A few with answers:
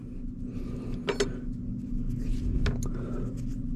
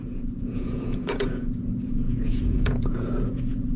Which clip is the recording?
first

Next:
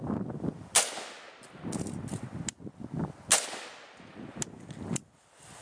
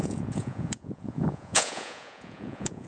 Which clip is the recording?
first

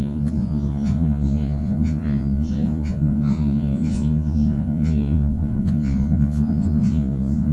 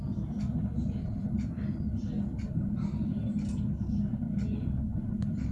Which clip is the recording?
second